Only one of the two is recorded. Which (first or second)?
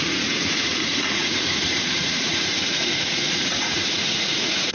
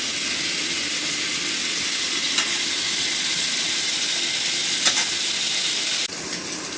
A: second